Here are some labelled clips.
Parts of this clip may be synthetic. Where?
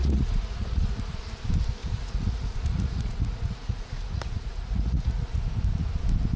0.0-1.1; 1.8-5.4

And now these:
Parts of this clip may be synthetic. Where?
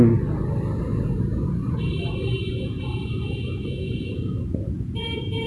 0.9-1.9; 2.5-5.5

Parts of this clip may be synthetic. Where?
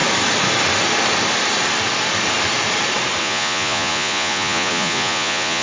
3.2-5.6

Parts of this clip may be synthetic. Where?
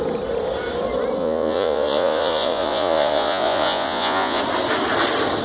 1.2-4.4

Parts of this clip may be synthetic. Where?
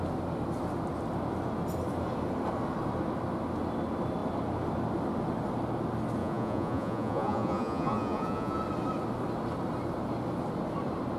6.2-8.6